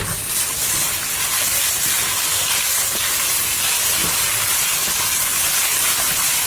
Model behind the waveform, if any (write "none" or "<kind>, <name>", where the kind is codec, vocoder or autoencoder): none